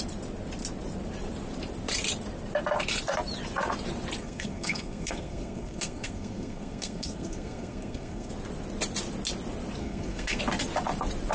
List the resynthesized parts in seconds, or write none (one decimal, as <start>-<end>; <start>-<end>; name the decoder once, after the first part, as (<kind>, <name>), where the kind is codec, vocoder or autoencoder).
4.2-8.3 (codec, SNAC); 9.8-10.4